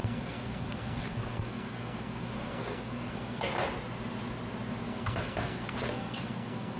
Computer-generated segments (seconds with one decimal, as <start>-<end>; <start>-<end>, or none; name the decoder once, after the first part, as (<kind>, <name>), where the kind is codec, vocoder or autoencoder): 0.0-3.5 (codec, SNAC); 4.8-6.8